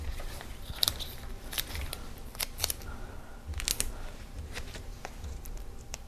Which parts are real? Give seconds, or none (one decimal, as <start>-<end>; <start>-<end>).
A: 0.5-4.2